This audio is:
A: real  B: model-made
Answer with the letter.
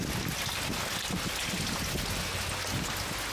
A